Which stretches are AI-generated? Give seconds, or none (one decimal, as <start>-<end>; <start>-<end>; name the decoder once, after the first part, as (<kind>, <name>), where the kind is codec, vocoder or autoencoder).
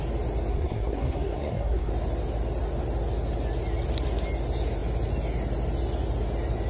0.5-1.9 (codec, SNAC)